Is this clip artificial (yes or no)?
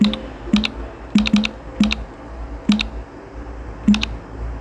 no